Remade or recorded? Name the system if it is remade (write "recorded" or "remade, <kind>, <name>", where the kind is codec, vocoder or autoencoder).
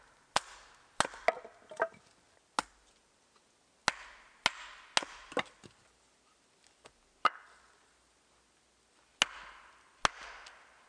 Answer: recorded